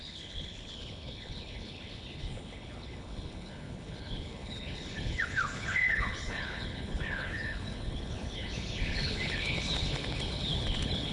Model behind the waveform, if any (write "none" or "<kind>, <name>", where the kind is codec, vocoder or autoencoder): codec, HILCodec